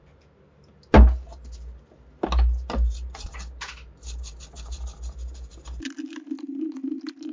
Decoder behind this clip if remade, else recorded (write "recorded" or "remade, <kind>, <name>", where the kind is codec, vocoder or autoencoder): recorded